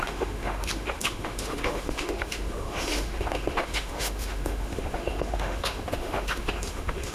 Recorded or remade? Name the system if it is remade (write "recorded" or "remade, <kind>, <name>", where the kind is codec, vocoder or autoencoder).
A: remade, autoencoder, DAC-VAE